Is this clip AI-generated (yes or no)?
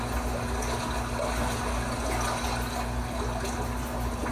no